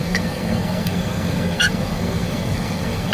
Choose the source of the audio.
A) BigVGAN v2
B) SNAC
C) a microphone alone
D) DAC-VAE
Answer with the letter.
B